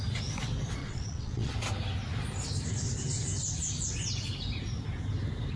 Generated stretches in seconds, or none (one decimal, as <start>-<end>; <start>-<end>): 0.8-1.5